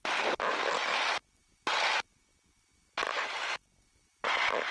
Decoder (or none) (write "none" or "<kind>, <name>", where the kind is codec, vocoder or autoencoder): none